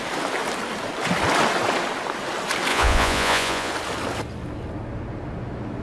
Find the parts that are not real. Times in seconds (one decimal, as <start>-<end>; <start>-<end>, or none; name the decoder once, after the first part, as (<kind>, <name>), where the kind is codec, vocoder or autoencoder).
2.7-3.7 (vocoder, Vocos)